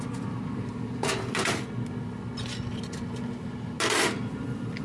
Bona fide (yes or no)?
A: yes